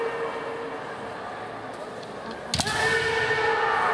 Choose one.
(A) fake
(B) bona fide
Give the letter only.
B